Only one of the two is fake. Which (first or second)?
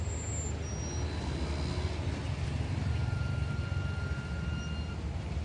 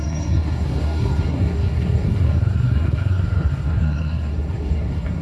second